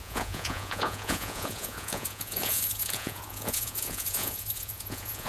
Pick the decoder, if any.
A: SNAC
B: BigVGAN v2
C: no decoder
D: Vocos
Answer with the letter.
D